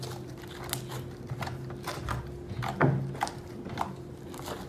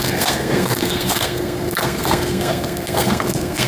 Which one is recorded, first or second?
first